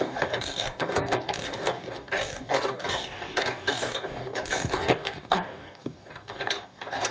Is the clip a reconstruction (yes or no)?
yes